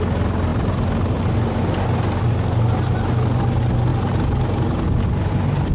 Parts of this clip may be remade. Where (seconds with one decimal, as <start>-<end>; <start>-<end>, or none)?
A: none